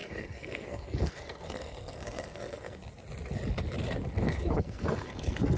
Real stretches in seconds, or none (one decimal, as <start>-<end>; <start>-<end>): 2.8-4.2